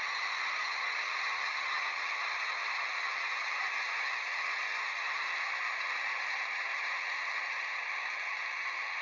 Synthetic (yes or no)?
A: yes